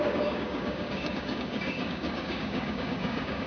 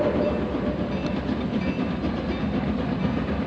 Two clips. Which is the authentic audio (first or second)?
second